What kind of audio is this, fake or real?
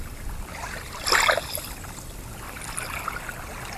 real